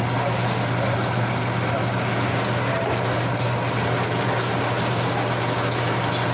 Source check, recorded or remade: recorded